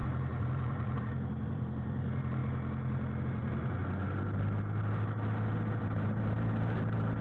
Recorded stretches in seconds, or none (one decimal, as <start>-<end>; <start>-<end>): 2.4-3.2; 3.8-5.8